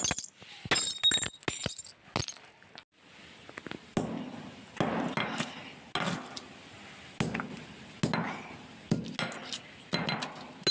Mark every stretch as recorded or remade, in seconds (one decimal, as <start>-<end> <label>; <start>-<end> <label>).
0.0-10.7 recorded